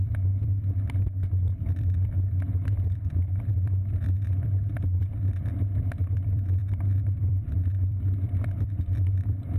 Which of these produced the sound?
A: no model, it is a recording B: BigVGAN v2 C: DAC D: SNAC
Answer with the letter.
B